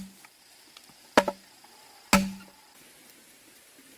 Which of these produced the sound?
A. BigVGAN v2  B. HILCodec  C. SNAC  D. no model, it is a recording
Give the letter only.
D